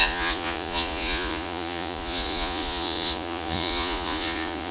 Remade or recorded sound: remade